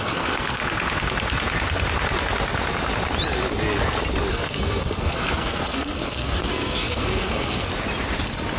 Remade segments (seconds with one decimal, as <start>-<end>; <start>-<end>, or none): 0.0-0.6; 4.3-7.7